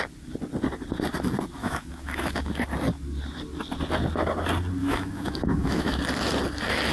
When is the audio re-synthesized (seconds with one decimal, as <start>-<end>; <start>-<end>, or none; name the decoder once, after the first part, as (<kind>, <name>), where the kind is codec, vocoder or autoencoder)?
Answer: 1.6-2.5 (autoencoder, DAC-VAE); 4.8-6.0